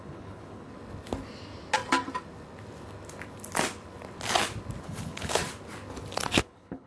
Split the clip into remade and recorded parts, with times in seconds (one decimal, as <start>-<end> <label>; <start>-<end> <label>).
0.0-0.7 remade; 0.7-4.8 recorded; 4.8-5.4 remade; 5.4-6.3 recorded; 6.3-6.9 remade